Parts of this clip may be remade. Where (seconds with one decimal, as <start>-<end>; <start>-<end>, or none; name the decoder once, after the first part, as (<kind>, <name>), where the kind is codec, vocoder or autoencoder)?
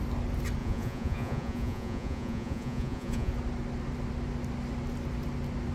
0.6-3.3 (vocoder, Vocos)